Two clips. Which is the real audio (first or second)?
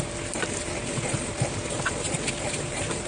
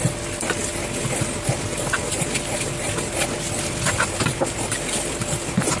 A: second